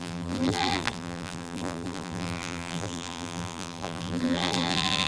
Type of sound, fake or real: fake